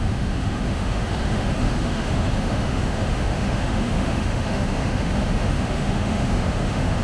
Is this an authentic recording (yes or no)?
no